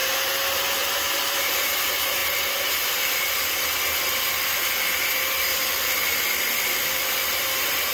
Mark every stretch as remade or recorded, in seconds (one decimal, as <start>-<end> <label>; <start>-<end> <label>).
0.0-1.4 recorded; 1.4-7.9 remade